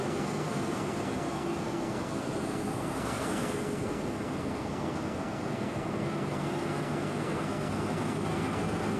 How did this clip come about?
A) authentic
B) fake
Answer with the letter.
B